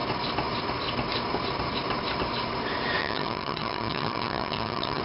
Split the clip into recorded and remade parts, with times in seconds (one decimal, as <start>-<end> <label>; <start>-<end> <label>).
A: 0.0-3.0 recorded; 3.0-5.0 remade